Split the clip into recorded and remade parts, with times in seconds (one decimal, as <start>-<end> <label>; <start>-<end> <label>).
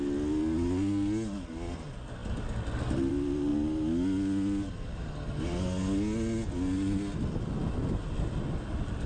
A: 0.0-9.1 recorded